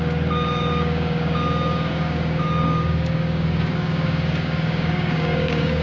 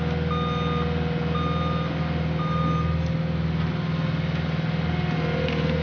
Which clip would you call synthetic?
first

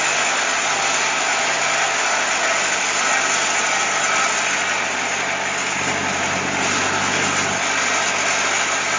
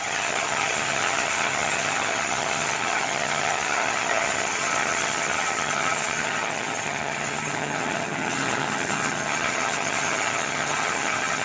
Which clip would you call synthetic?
second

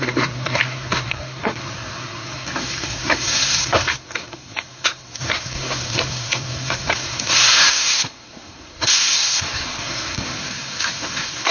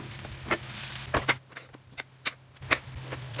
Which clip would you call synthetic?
first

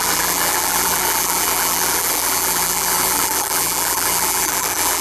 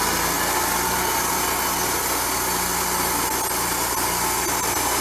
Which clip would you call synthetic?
first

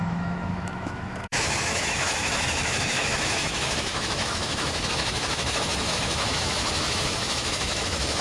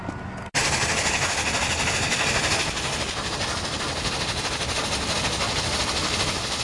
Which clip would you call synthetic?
first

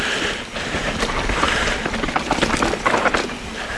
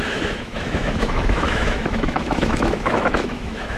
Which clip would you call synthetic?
second